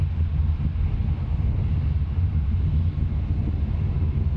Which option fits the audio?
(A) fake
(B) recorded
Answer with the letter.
B